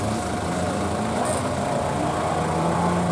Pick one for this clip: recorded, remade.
recorded